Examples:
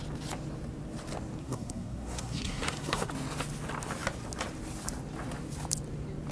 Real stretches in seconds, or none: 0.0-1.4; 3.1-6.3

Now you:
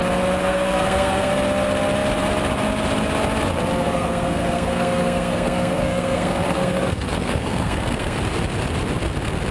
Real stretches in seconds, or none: 0.0-0.4; 1.3-3.8; 8.2-9.5

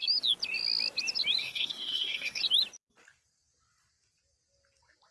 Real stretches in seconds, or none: 0.0-1.4; 2.4-5.1

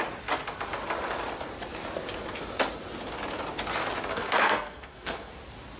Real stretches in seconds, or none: 0.0-4.1; 5.3-5.8

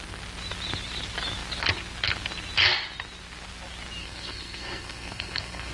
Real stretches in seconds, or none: 0.0-4.0

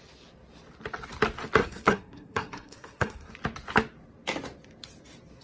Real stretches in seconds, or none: 0.0-1.6; 3.3-5.4

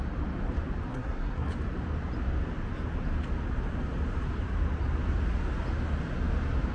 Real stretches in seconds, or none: 0.0-0.9; 1.5-6.7

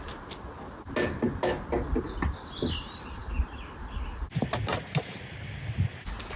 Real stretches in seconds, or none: 0.0-6.4